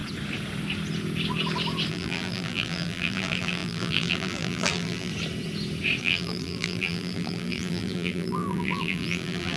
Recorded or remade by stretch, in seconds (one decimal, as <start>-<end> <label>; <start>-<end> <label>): 0.0-1.9 recorded; 1.9-5.1 remade; 5.1-6.0 recorded; 6.0-9.6 remade

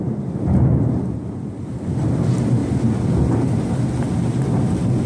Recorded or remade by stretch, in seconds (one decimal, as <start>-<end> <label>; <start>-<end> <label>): 0.0-5.1 recorded

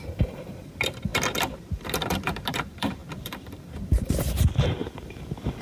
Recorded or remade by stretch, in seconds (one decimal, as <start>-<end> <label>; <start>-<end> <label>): 0.0-1.1 remade; 1.1-2.5 recorded; 2.5-5.6 remade

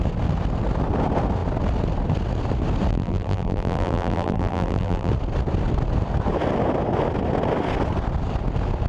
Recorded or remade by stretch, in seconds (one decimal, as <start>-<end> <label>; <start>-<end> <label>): 0.0-2.9 recorded; 2.9-5.1 remade; 5.1-8.9 recorded

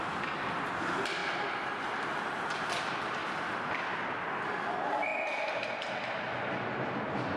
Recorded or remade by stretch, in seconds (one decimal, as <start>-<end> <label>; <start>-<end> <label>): 0.0-1.2 recorded; 1.2-1.8 remade; 1.8-7.4 recorded

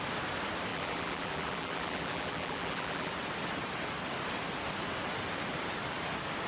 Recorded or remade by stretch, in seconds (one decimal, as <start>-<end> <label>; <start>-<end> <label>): 0.0-0.7 recorded; 0.7-3.1 remade; 3.1-6.5 recorded

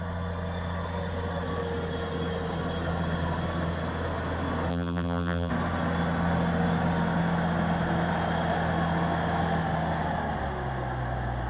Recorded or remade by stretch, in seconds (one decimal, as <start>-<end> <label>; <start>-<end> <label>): 0.0-4.7 recorded; 4.7-5.5 remade; 5.5-11.5 recorded

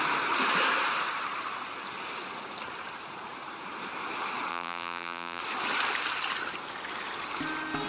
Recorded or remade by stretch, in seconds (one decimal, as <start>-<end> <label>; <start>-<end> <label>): 0.0-4.5 recorded; 4.5-5.4 remade; 5.4-7.9 recorded